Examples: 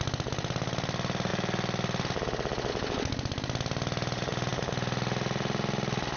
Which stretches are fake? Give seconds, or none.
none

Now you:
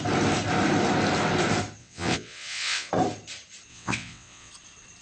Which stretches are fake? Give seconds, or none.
1.8-2.9 (vocoder, WaveNeXt); 3.7-4.5

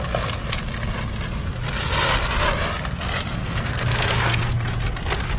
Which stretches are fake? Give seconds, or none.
3.4-4.5 (codec, SNAC)

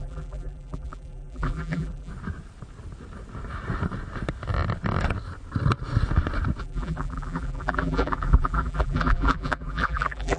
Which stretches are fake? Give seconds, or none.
0.0-2.1 (vocoder, BigVGAN v2); 6.6-10.4

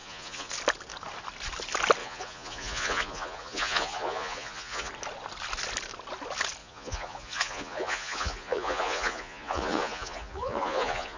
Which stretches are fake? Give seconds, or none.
0.0-0.5 (vocoder, Vocos); 2.0-4.9; 6.6-11.2

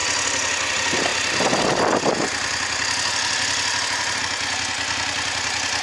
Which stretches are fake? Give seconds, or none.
none